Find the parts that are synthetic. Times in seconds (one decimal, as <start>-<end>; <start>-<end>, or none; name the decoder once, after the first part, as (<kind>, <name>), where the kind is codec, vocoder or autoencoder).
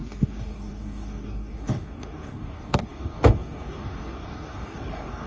0.0-5.3 (codec, DAC)